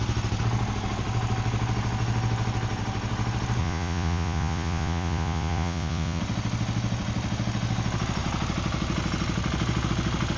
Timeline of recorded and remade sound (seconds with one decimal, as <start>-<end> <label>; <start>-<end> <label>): 0.0-3.6 recorded; 3.6-6.2 remade; 6.2-10.4 recorded